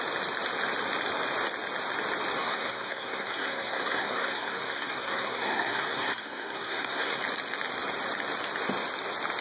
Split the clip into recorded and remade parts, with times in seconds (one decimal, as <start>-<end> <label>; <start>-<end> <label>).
0.0-2.4 recorded; 2.4-7.2 remade; 7.2-9.4 recorded